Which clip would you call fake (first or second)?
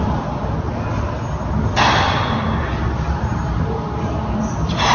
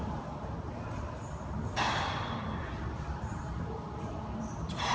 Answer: second